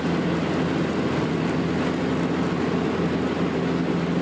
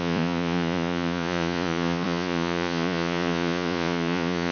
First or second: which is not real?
second